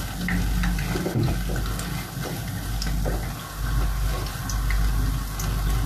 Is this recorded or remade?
recorded